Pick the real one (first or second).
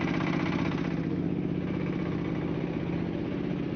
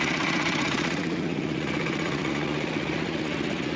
first